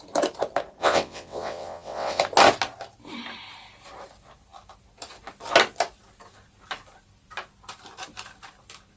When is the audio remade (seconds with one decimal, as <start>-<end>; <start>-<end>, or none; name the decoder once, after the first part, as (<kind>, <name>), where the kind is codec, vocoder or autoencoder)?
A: 0.8-2.2 (vocoder, WaveNeXt)